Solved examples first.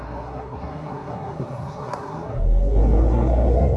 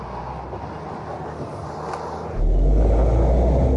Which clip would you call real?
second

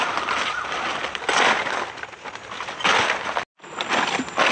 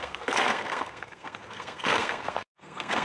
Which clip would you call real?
first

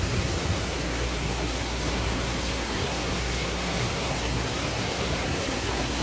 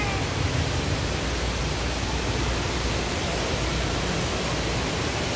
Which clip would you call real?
second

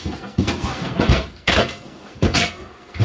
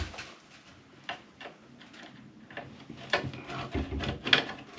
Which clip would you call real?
second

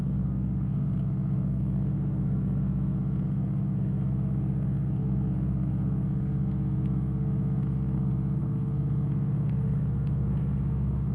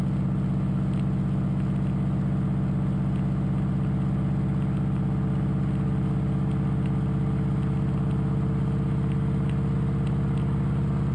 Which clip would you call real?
second